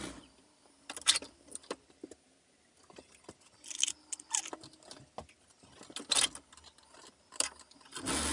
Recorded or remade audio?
recorded